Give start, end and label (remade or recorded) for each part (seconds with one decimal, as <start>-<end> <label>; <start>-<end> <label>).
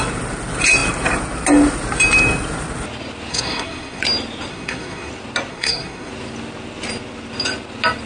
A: 0.0-3.3 recorded; 3.3-4.0 remade; 4.0-4.5 recorded; 4.5-5.1 remade; 5.1-5.5 recorded; 5.5-6.1 remade; 6.1-8.1 recorded